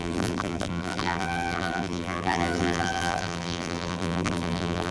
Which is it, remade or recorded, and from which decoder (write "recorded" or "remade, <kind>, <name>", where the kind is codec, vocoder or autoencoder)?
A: remade, vocoder, BigVGAN v2